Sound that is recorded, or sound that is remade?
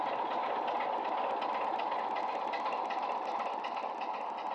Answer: recorded